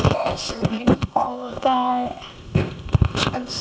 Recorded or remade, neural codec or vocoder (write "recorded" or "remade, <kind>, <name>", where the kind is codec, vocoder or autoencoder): remade, codec, ZipCodec